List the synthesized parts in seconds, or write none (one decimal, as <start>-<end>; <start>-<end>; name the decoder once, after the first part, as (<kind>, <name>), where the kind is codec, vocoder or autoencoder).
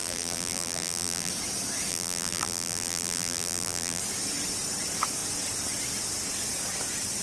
0.0-1.3 (vocoder, BigVGAN v2); 1.9-4.0